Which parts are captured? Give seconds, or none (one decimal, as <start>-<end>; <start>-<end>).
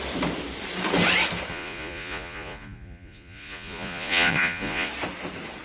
0.0-1.5; 4.9-5.6